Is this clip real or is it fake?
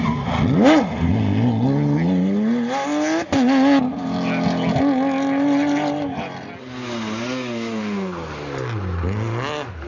real